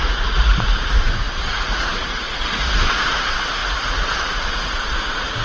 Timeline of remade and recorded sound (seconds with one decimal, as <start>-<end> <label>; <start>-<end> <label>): 0.0-5.4 remade